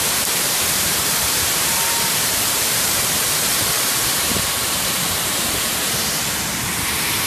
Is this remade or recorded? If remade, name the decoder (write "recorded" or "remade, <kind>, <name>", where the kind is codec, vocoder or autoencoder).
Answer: remade, vocoder, BigVGAN v2